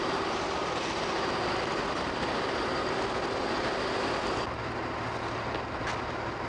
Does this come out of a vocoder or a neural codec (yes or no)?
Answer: no